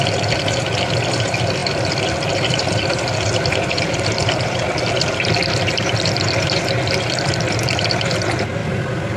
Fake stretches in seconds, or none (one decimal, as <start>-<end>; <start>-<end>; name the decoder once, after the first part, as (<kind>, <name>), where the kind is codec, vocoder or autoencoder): none